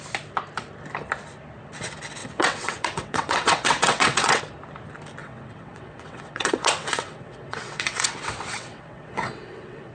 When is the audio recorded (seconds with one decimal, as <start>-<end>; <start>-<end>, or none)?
0.0-2.2; 4.4-5.2